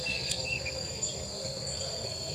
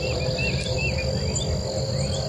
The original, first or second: second